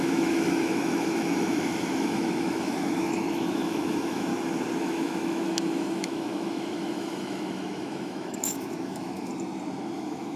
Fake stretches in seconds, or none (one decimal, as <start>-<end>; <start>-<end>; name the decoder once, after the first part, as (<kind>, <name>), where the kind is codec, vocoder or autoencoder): 0.0-4.3 (autoencoder, DAC-VAE); 4.8-9.3; 9.8-10.4